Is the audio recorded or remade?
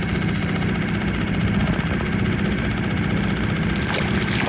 recorded